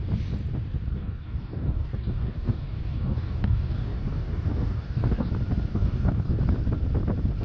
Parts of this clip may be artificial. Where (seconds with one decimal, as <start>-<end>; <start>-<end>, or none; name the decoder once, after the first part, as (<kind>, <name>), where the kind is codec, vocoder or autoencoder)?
0.9-5.3 (codec, DAC); 5.7-6.4